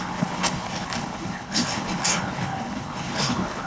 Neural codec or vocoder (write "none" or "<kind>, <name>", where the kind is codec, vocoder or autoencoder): codec, HILCodec